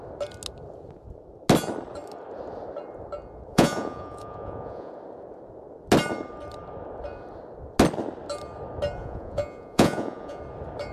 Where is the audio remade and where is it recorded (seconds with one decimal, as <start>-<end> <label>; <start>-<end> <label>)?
0.0-3.5 recorded; 3.5-4.9 remade; 4.9-9.0 recorded; 9.0-10.4 remade; 10.4-10.9 recorded